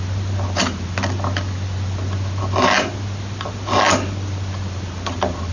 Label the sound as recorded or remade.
recorded